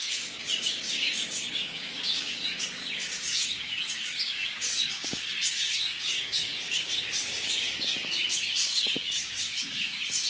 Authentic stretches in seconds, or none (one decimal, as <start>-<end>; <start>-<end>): none